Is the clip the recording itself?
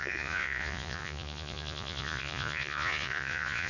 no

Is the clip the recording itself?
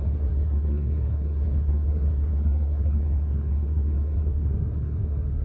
no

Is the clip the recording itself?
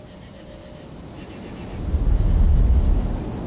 yes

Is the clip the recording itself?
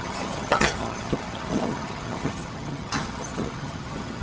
no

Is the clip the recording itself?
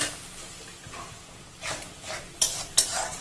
yes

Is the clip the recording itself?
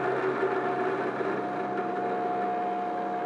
yes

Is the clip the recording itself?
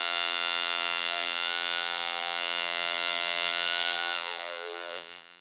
no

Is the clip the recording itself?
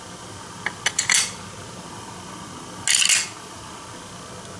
yes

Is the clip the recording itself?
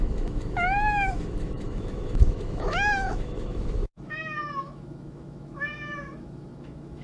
no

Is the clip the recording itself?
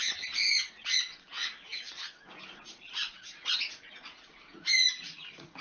no